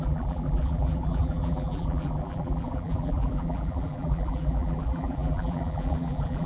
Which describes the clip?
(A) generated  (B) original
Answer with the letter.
A